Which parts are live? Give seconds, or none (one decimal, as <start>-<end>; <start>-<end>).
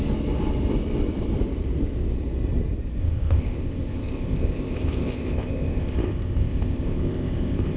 0.0-3.0